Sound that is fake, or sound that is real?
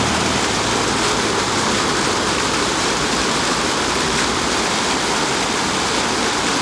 real